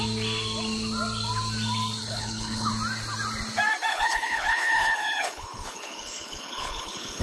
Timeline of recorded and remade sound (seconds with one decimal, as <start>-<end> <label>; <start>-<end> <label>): 0.0-2.0 recorded; 2.0-2.7 remade; 2.7-3.9 recorded; 3.9-7.2 remade

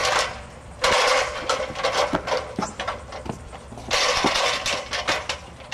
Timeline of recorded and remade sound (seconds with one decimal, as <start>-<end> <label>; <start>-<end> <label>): 0.0-5.7 recorded